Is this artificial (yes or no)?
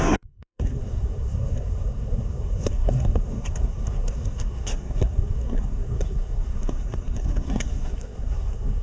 yes